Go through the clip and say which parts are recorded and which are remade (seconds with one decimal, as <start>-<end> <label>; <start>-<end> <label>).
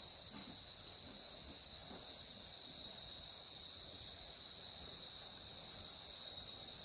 0.0-1.8 recorded; 1.8-5.6 remade; 5.6-6.8 recorded